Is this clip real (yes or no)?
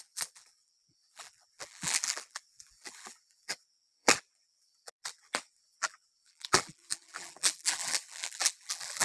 no